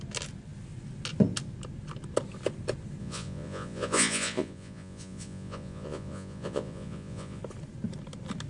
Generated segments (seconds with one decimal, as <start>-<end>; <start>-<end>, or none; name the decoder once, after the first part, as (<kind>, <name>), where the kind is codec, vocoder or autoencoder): 3.0-7.4 (vocoder, Vocos)